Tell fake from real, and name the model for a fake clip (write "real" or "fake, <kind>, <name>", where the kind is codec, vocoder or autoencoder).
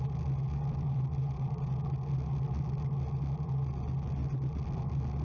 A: real